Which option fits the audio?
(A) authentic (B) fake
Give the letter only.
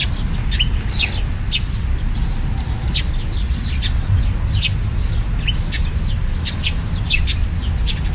A